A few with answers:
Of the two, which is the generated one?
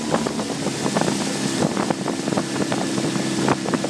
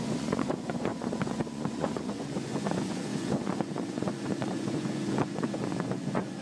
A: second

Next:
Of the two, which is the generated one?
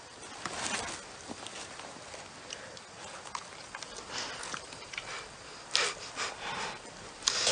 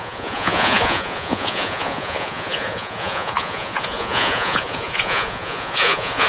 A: second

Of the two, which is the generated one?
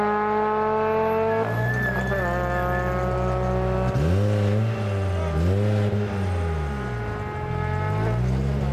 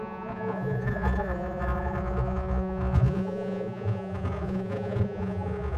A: second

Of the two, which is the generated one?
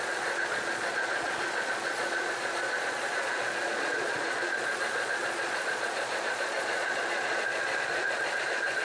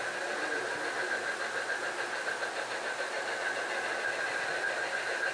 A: first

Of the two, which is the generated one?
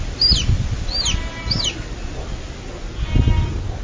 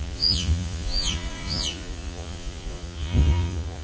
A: second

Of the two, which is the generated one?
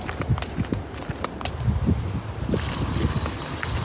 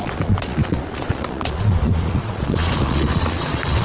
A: second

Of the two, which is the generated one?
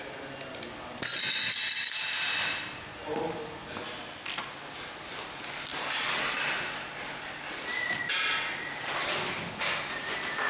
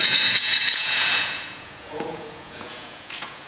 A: second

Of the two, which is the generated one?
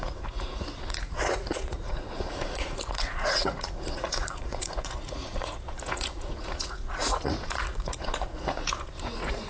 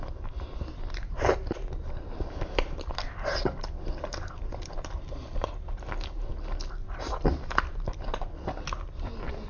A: first